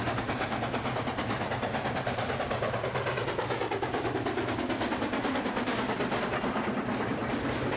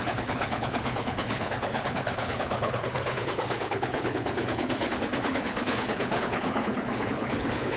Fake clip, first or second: second